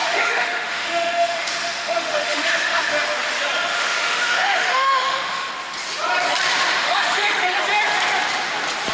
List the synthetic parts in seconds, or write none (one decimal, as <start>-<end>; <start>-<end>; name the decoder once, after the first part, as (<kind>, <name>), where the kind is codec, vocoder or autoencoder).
0.0-2.9 (autoencoder, DAC-VAE); 3.7-5.5; 6.8-7.6